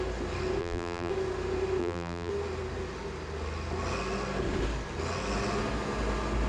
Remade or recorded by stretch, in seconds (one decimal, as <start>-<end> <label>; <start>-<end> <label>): 0.0-0.6 recorded; 0.6-1.1 remade; 1.1-1.8 recorded; 1.8-2.3 remade; 2.3-6.5 recorded